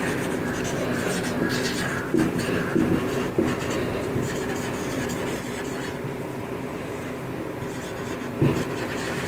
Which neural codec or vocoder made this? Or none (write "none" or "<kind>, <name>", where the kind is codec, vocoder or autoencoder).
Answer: none